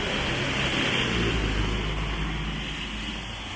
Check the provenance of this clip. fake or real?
real